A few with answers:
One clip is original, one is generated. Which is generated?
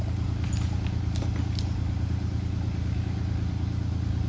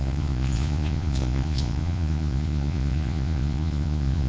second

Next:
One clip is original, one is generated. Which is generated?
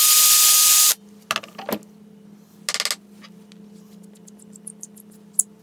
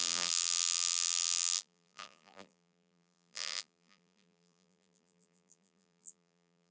second